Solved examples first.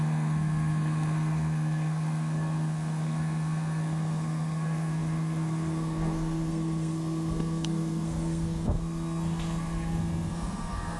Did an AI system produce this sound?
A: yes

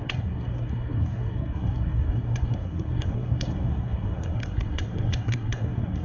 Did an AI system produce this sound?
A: yes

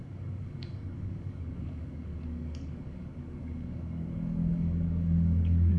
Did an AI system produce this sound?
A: yes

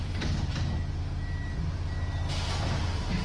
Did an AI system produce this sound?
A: no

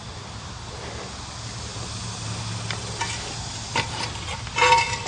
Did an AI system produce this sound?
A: no